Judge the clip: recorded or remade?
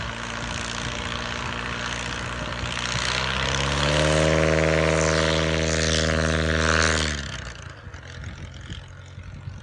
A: recorded